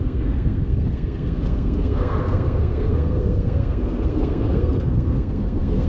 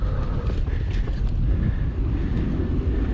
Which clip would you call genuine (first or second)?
second